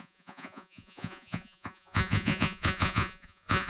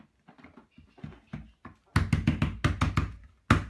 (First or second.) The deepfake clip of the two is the first